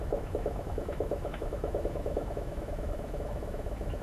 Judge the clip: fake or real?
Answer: fake